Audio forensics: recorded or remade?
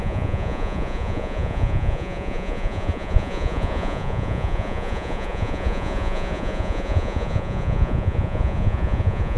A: remade